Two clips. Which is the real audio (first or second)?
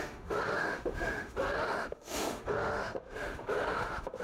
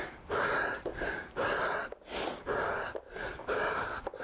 second